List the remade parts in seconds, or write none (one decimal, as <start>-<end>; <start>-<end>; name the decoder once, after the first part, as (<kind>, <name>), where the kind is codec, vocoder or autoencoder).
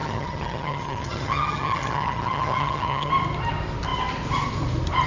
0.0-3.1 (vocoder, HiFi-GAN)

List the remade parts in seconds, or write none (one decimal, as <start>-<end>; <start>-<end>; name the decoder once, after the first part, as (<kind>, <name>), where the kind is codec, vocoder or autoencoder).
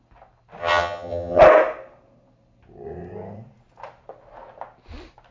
0.6-1.4 (vocoder, HiFi-GAN)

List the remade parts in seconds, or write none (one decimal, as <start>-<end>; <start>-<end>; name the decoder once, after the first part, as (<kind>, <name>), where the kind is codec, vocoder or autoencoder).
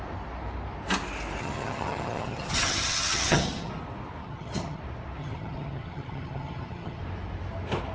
1.4-3.7 (vocoder, HiFi-GAN); 4.2-4.8; 5.2-7.0